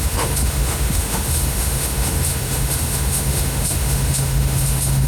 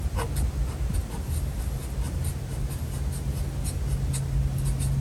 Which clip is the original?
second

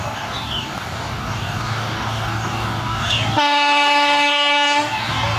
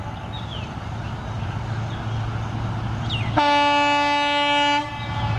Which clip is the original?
second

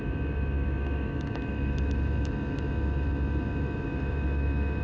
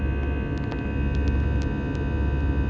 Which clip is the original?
second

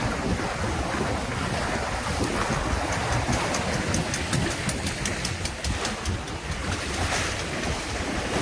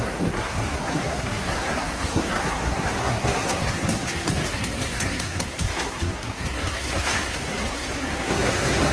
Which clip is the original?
first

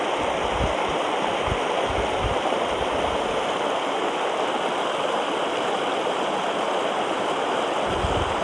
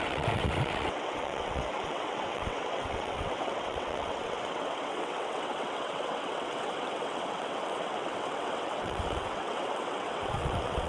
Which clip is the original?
first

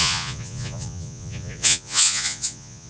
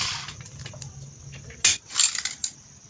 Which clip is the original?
second